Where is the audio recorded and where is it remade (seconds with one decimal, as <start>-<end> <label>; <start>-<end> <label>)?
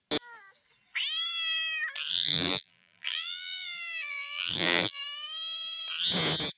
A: 0.0-2.1 recorded; 2.1-5.0 remade; 5.0-6.6 recorded